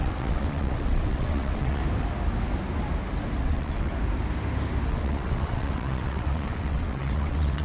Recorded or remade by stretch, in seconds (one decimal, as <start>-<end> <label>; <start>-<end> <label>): 0.0-1.8 remade; 1.8-3.4 recorded; 3.4-3.9 remade; 3.9-4.9 recorded; 4.9-7.6 remade